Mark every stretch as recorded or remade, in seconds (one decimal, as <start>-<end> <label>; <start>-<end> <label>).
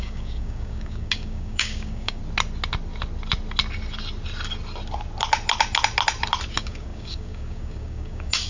0.0-2.2 remade; 2.2-6.5 recorded; 6.5-8.5 remade